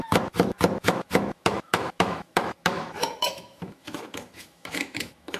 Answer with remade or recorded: remade